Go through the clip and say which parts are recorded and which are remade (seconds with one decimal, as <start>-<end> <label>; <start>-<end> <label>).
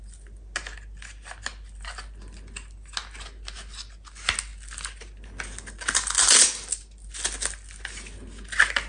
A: 0.0-8.9 recorded